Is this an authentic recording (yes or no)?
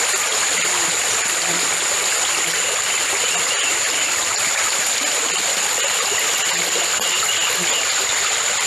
yes